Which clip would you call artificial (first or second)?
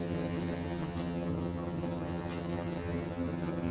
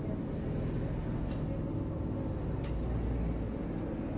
first